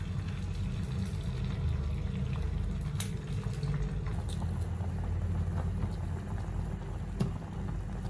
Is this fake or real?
real